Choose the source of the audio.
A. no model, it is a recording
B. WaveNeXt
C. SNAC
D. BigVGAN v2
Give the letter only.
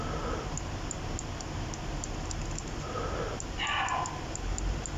A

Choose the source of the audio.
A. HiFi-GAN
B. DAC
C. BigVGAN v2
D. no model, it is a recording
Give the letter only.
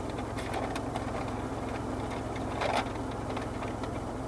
D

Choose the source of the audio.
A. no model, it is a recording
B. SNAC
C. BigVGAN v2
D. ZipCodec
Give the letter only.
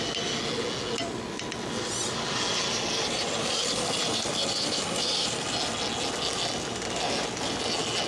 A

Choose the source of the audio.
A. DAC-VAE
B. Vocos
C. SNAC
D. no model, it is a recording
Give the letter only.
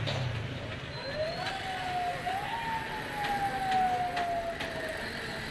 D